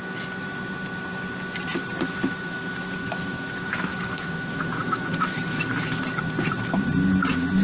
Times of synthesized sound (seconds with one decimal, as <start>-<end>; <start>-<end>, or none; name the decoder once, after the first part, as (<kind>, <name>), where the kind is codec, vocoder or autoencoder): 2.2-6.0 (autoencoder, DAC-VAE)